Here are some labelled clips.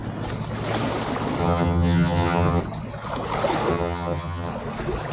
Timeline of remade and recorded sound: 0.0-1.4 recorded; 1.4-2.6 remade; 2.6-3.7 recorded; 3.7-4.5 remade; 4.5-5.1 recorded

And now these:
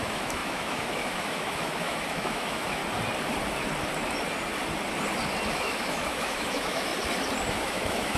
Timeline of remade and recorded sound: 0.0-2.8 remade; 2.8-5.5 recorded; 5.5-6.9 remade; 6.9-7.5 recorded; 7.5-8.2 remade

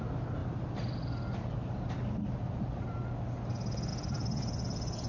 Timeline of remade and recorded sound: 0.0-0.4 recorded; 0.4-1.9 remade; 1.9-3.9 recorded; 3.9-5.1 remade

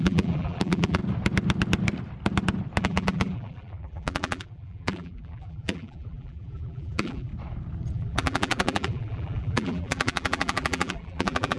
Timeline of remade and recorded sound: 0.0-1.0 remade; 1.0-2.8 recorded; 2.8-7.3 remade; 7.3-7.9 recorded; 7.9-11.6 remade